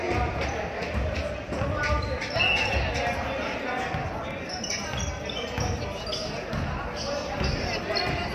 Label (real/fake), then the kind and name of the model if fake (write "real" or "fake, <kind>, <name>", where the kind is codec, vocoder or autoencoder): real